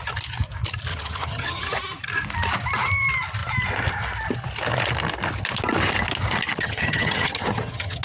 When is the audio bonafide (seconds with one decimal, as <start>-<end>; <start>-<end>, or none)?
0.0-0.9; 1.7-6.6